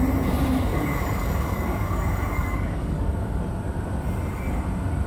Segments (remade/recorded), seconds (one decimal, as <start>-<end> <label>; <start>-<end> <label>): 0.0-0.7 recorded; 0.7-3.4 remade; 3.4-5.1 recorded

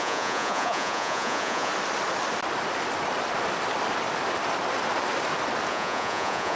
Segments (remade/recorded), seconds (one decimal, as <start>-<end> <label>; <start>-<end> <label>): 0.0-1.7 remade; 1.7-5.7 recorded; 5.7-6.6 remade

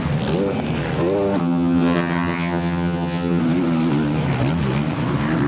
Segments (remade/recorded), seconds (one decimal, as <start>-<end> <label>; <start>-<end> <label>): 0.0-1.4 recorded; 1.4-3.4 remade; 3.4-5.5 recorded

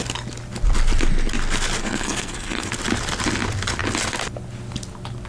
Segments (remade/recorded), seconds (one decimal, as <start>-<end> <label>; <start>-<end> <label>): 0.0-1.8 recorded; 1.8-2.7 remade; 2.7-5.3 recorded

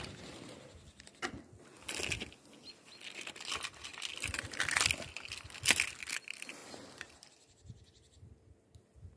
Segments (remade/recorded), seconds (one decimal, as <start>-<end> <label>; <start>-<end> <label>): 0.0-3.9 recorded; 3.9-5.5 remade; 5.5-6.6 recorded; 6.6-8.2 remade; 8.2-9.2 recorded